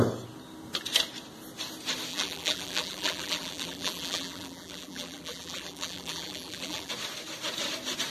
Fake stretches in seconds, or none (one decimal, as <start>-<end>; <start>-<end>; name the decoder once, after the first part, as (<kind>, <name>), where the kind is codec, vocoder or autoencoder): 2.1-6.9 (vocoder, BigVGAN v2)